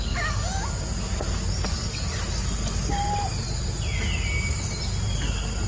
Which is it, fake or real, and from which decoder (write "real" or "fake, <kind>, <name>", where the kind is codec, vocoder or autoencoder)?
real